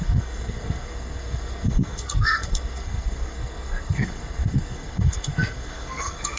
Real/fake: fake